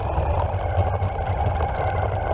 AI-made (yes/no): no